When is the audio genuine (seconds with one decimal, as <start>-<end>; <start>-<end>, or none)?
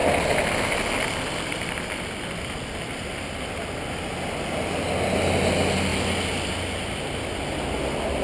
0.0-8.2